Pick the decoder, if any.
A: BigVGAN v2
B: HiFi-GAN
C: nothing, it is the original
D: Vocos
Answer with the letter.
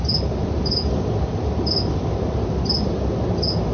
C